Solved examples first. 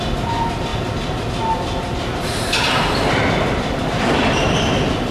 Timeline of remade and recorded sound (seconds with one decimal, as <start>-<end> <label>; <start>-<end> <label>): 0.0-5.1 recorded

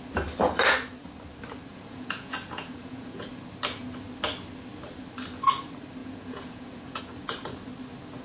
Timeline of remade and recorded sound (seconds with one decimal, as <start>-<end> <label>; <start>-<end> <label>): 0.0-1.7 recorded; 1.7-3.3 remade; 3.3-6.0 recorded; 6.0-7.0 remade; 7.0-8.2 recorded

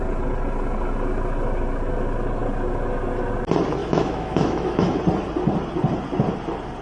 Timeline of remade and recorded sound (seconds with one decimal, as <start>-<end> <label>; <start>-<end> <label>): 0.0-3.8 recorded; 3.8-5.0 remade; 5.0-6.8 recorded

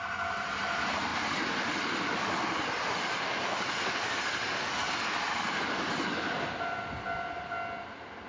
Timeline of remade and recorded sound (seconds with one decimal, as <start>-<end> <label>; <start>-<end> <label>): 0.0-8.3 recorded

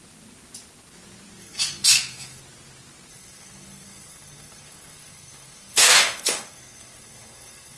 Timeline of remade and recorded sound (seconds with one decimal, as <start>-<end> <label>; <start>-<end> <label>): 0.0-1.4 recorded; 1.4-2.4 remade; 2.4-3.1 recorded; 3.1-7.8 remade